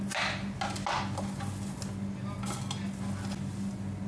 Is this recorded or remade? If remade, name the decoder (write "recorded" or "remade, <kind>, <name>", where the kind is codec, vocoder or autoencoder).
recorded